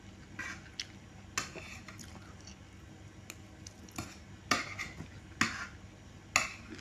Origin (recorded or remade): recorded